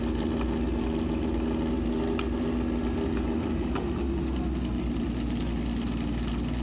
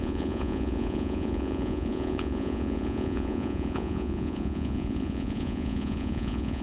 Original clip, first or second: first